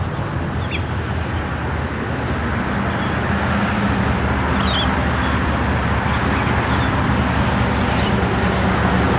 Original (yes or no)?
yes